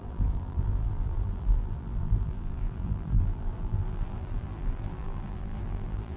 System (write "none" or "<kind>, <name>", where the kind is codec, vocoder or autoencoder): vocoder, BigVGAN v2